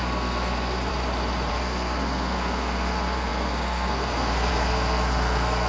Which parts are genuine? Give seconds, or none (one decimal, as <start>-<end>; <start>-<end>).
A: 0.9-1.5